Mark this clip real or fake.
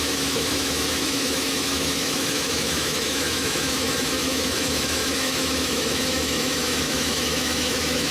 fake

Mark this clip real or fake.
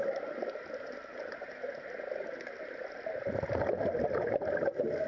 real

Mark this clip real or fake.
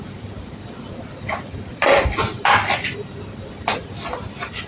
real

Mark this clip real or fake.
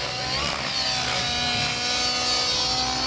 real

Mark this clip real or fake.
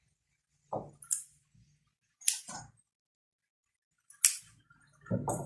real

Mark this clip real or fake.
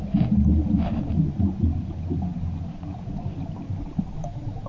real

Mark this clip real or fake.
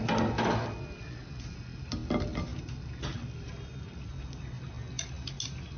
real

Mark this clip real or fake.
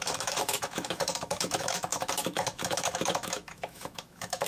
fake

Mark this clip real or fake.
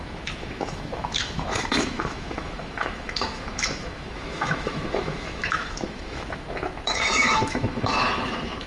fake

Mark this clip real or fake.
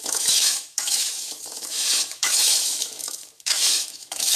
fake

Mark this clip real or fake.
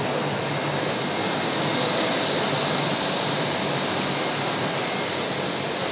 real